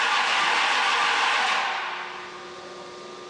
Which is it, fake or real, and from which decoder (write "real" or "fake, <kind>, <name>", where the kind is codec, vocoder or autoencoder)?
real